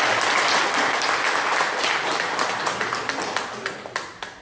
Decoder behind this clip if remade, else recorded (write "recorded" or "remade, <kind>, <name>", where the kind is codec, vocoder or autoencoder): recorded